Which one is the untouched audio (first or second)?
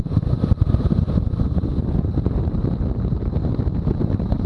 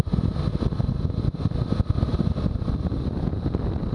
second